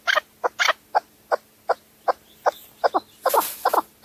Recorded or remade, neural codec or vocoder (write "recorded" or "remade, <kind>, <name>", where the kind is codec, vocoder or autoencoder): recorded